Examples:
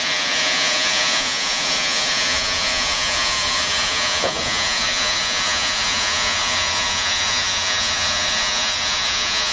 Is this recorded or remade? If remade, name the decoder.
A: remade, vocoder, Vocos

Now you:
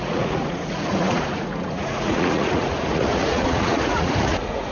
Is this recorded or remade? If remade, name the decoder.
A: remade, vocoder, Vocos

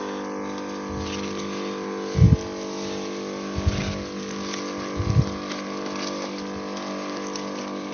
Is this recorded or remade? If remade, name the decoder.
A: recorded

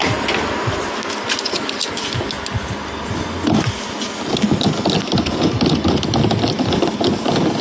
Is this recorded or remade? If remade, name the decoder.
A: recorded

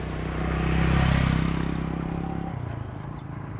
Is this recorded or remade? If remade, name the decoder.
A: recorded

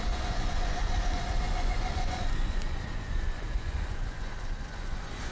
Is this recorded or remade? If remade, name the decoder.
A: remade, vocoder, Vocos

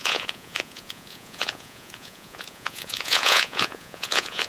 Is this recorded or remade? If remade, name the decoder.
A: remade, vocoder, Vocos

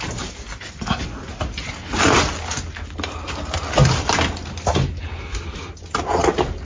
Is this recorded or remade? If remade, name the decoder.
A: recorded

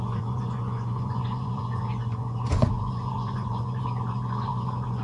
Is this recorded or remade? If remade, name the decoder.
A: remade, vocoder, Vocos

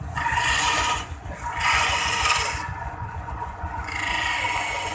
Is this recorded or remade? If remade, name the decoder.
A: remade, vocoder, Vocos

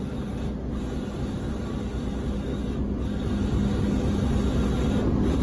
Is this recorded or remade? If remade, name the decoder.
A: recorded